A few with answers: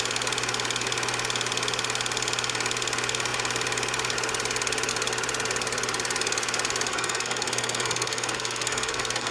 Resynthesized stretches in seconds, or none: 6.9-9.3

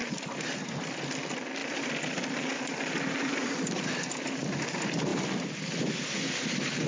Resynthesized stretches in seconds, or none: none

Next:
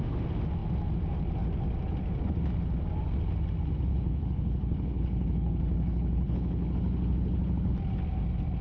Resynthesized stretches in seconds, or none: 3.9-7.7